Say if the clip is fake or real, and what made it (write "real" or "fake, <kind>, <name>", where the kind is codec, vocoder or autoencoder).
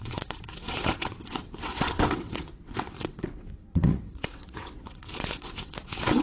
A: fake, vocoder, WaveNeXt